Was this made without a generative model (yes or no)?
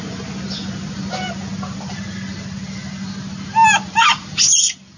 yes